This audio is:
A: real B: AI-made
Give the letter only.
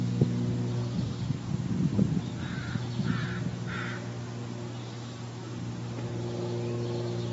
A